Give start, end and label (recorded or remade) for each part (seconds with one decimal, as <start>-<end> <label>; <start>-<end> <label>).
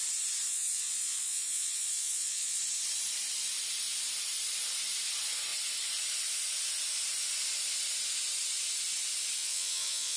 0.0-0.5 recorded; 0.5-2.6 remade; 2.6-9.4 recorded; 9.4-10.2 remade